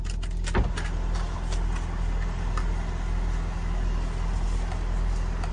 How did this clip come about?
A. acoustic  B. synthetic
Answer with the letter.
A